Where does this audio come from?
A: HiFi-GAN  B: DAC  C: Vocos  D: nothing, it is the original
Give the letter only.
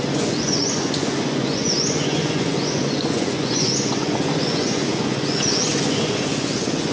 C